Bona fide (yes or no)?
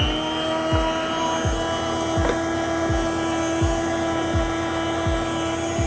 yes